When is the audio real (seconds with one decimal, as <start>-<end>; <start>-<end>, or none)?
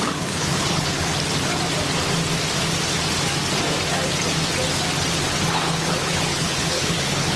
1.1-5.5